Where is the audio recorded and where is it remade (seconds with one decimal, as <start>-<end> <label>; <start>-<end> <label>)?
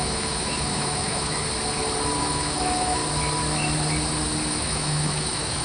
0.0-1.4 remade; 1.4-2.2 recorded; 2.2-3.0 remade; 3.0-4.5 recorded; 4.5-5.6 remade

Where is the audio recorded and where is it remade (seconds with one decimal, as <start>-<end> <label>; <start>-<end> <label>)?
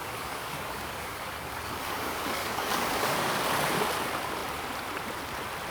0.0-3.4 remade; 3.4-5.7 recorded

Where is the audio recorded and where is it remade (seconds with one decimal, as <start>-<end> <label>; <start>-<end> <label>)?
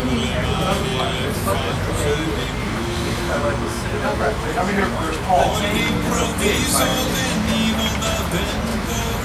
0.0-2.6 recorded; 2.6-5.6 remade; 5.6-8.7 recorded; 8.7-9.2 remade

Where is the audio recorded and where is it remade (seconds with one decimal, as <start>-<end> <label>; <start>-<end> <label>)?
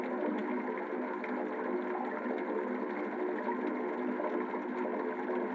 0.0-5.5 recorded